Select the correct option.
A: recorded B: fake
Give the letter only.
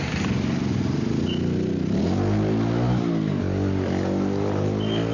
A